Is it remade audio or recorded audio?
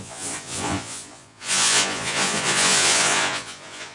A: remade